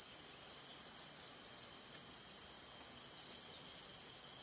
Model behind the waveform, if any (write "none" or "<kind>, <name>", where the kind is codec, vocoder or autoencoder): none